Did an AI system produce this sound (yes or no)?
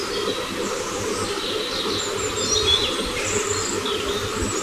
no